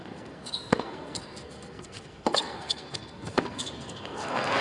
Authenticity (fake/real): fake